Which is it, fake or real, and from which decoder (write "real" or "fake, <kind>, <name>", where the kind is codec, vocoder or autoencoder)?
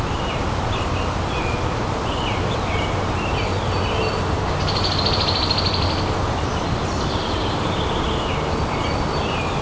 real